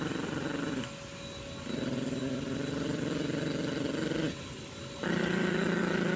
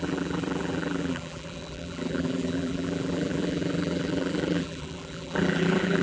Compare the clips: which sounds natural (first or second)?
first